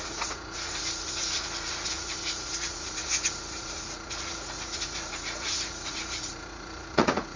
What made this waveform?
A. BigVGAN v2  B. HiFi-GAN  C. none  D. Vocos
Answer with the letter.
D